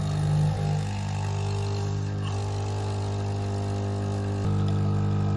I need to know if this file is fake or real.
real